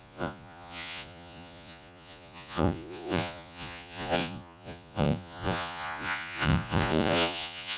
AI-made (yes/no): yes